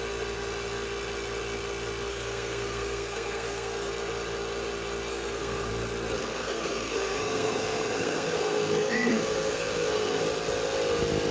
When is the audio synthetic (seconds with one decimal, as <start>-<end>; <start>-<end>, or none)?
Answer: 2.1-3.9; 5.1-5.7; 6.2-10.2